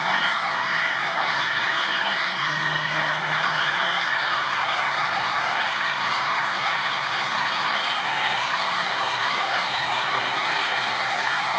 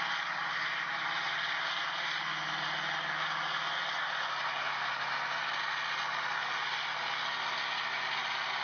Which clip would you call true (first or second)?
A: second